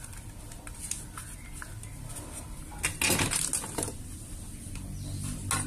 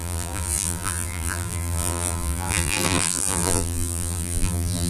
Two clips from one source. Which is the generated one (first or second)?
second